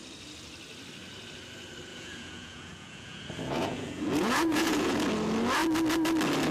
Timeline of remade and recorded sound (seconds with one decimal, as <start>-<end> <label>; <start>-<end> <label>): 0.0-1.9 recorded; 1.9-5.0 remade; 5.0-6.5 recorded

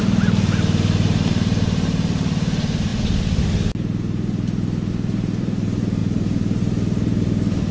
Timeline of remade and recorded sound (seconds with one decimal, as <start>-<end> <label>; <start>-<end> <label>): 0.0-2.9 remade; 2.9-4.9 recorded; 4.9-7.7 remade

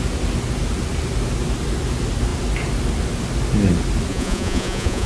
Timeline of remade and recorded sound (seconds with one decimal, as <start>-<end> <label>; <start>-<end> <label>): 0.0-4.1 recorded; 4.1-5.1 remade

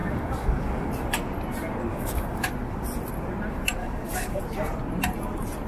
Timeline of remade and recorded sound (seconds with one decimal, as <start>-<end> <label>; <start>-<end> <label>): 0.0-0.9 remade; 0.9-1.9 recorded; 1.9-2.5 remade; 2.5-3.8 recorded; 3.8-4.4 remade; 4.4-5.7 recorded

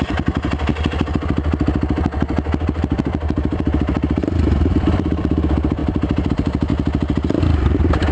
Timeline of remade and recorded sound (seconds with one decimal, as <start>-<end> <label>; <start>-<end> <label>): 0.0-0.7 remade; 0.7-3.0 recorded; 3.0-6.7 remade; 6.7-7.4 recorded; 7.4-8.1 remade

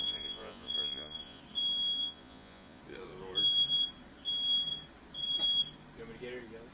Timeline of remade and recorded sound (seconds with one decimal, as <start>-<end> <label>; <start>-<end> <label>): 0.0-1.4 remade; 1.4-2.0 recorded; 2.0-2.8 remade; 2.8-6.7 recorded

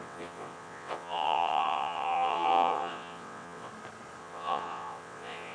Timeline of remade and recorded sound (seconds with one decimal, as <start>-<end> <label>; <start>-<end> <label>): 0.0-3.7 remade; 3.7-4.2 recorded; 4.2-5.5 remade